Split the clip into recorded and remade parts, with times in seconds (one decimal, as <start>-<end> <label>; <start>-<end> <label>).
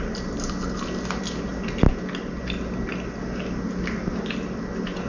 0.0-5.1 recorded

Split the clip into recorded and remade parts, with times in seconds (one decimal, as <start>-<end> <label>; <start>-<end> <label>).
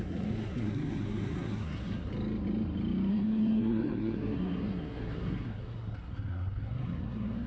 0.0-2.1 remade; 2.1-3.1 recorded; 3.1-7.5 remade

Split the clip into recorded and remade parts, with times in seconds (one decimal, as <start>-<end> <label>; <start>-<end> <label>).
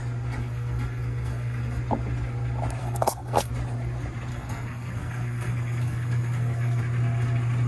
0.0-0.4 recorded; 0.4-1.8 remade; 1.8-2.8 recorded; 2.8-3.5 remade; 3.5-4.3 recorded; 4.3-6.8 remade; 6.8-7.7 recorded